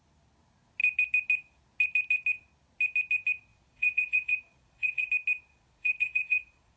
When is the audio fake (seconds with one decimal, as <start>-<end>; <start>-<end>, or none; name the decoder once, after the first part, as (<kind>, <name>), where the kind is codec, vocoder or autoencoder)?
3.5-5.1 (vocoder, Vocos); 5.5-6.8